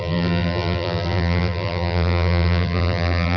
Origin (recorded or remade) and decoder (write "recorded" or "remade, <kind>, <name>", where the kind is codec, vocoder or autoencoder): remade, vocoder, BigVGAN v2